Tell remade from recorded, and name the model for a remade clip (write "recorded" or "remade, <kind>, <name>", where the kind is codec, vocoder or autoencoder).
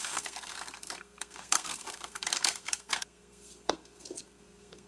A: remade, codec, SNAC